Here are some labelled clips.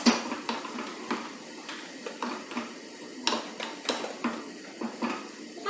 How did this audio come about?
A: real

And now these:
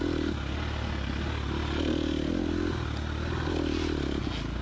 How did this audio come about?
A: real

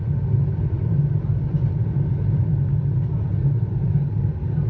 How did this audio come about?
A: real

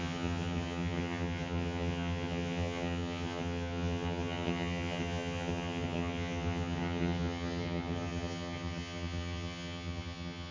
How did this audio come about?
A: fake